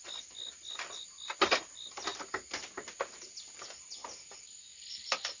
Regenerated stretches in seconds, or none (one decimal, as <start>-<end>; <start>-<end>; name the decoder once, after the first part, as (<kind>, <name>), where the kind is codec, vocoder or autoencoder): none